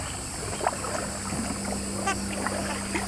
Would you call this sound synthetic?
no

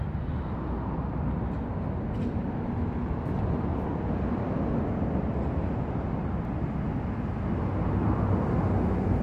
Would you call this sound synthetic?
no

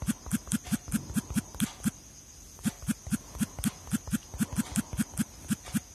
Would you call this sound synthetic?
no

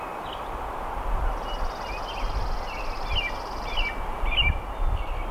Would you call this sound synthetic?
no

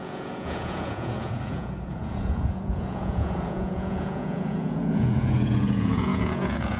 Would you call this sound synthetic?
yes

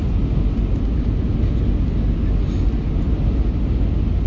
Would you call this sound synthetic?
no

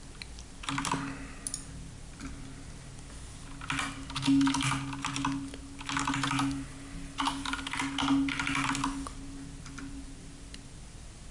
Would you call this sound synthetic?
no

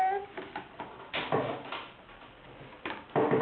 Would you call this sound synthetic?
no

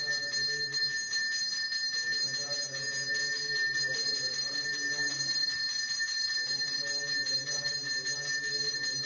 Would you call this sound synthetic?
no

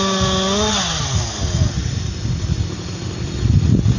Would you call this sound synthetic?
no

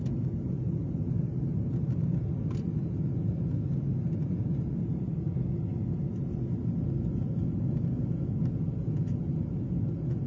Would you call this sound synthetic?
no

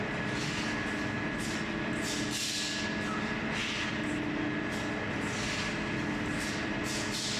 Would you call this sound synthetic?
no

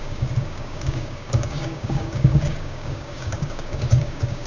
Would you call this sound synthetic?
yes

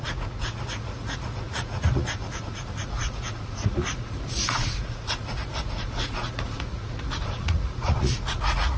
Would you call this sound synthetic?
yes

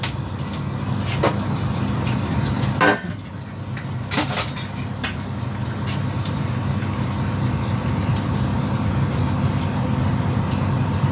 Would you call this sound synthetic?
no